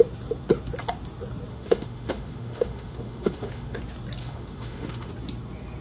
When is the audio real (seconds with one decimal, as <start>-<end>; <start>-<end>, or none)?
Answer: 0.0-1.5; 3.8-4.2; 5.1-5.8